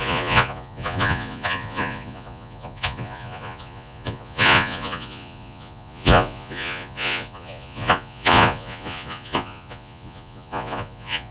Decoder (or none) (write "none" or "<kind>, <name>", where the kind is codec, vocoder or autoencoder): vocoder, Vocos